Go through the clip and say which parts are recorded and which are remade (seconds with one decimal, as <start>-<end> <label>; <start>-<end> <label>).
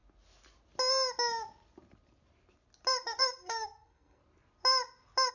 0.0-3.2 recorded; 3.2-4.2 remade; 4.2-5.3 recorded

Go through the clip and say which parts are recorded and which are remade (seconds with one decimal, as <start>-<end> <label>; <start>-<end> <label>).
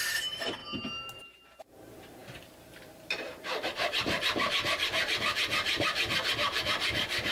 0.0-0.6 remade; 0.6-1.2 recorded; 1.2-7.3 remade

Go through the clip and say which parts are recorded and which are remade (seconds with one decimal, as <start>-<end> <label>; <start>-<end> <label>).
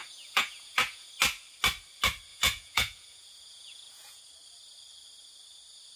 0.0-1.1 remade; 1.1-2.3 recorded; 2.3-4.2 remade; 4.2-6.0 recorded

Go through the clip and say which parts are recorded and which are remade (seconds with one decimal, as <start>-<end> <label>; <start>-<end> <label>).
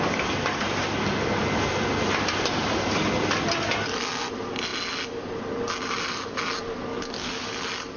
0.0-6.9 recorded; 6.9-7.5 remade; 7.5-8.0 recorded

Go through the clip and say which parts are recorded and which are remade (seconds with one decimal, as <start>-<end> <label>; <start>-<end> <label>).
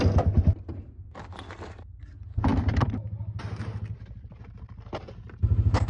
0.0-5.9 recorded